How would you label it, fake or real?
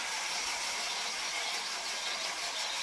real